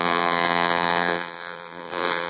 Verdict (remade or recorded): remade